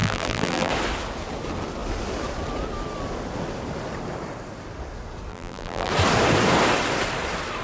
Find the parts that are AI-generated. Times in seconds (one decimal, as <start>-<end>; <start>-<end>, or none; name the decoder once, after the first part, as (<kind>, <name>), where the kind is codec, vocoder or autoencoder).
0.0-0.7 (vocoder, BigVGAN v2); 5.3-5.9